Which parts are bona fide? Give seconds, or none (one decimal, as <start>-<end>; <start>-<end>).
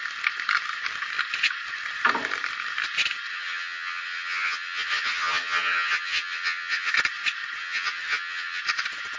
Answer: 0.0-3.3; 6.9-7.6; 8.6-9.2